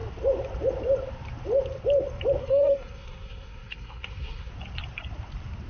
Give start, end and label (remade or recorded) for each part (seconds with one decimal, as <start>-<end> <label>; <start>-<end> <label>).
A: 0.0-2.4 recorded; 2.4-4.5 remade; 4.5-5.7 recorded